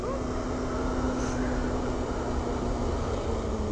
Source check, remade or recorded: recorded